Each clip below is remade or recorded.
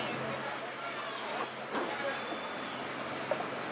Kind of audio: recorded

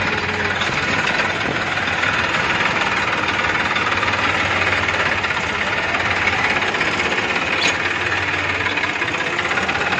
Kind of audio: recorded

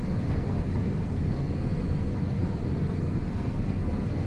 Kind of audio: remade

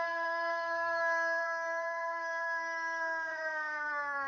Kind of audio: remade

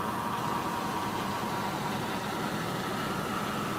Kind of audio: recorded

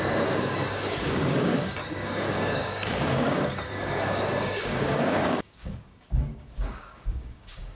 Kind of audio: remade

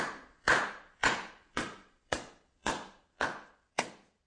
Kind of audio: remade